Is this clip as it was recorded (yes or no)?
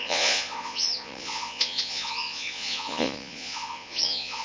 no